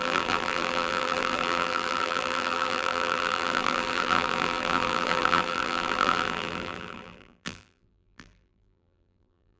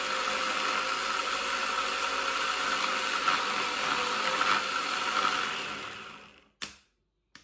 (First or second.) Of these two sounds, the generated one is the first